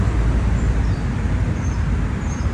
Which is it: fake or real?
fake